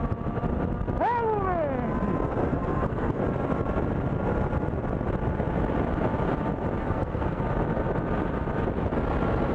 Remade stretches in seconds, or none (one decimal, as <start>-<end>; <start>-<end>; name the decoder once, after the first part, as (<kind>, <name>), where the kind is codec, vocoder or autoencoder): 2.5-3.2 (codec, SNAC); 6.8-7.4